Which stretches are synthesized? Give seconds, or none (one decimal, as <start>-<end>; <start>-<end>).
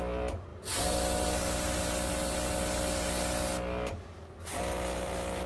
none